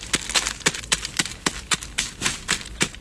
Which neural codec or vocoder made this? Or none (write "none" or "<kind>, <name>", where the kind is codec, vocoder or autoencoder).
none